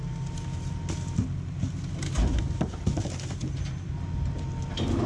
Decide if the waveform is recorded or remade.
recorded